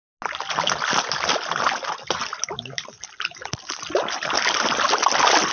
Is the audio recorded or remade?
recorded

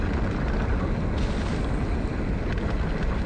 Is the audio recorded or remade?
recorded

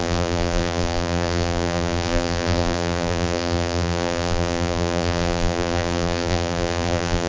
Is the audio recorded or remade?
remade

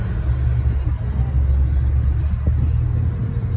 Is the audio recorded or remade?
recorded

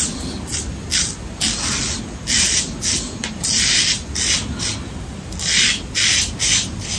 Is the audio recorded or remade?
recorded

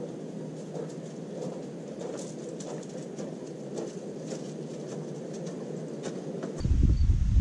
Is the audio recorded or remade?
recorded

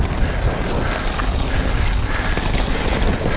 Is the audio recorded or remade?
recorded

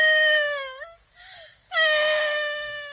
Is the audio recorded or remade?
remade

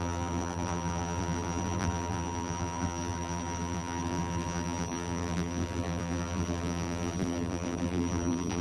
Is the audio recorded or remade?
remade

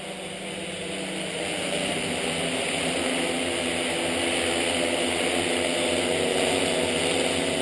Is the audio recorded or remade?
recorded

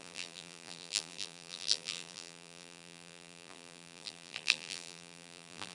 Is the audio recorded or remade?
remade